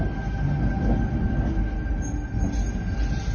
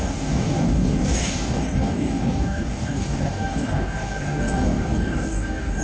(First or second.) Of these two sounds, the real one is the first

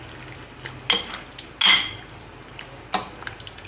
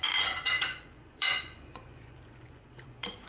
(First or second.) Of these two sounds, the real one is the first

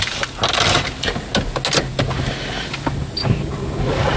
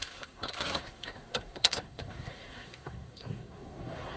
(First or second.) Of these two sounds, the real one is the first